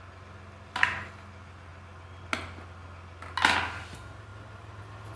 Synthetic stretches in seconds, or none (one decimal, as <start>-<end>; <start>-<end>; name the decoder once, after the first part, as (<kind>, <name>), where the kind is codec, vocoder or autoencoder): 4.3-4.8 (vocoder, BigVGAN v2)